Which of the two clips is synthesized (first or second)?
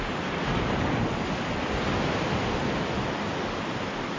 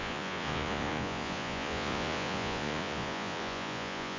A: second